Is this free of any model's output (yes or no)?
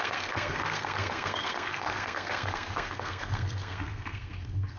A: no